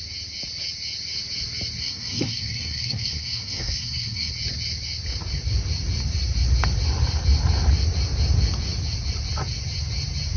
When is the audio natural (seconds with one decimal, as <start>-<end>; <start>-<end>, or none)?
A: 0.0-1.8; 4.3-10.4